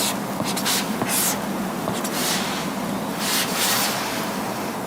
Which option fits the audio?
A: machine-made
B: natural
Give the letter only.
B